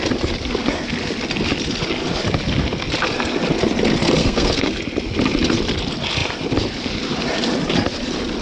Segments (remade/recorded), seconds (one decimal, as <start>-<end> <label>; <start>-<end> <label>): 0.0-4.2 recorded; 4.2-4.8 remade; 4.8-8.4 recorded